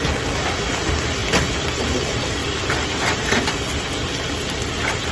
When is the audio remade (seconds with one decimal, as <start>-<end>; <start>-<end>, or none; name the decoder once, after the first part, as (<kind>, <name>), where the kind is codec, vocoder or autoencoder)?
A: 2.4-5.1 (vocoder, BigVGAN v2)